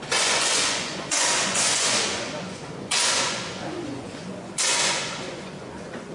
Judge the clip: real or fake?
fake